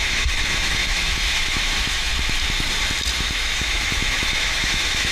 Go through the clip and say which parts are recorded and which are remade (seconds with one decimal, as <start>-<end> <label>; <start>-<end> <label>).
0.0-2.1 remade; 2.1-3.2 recorded; 3.2-5.1 remade